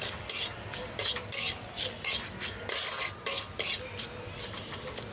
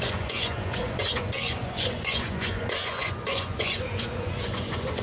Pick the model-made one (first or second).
second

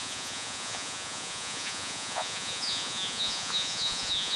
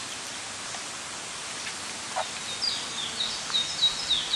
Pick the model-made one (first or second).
first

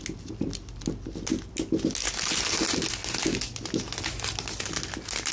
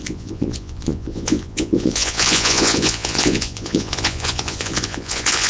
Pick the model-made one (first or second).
second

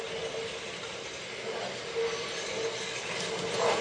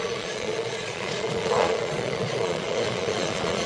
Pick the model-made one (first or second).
second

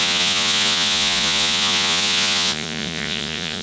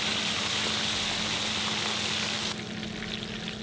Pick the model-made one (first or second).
first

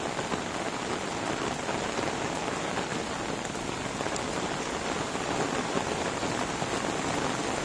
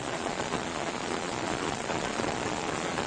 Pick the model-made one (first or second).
second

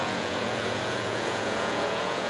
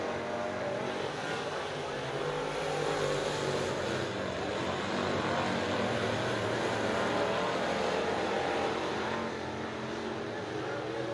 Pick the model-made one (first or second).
first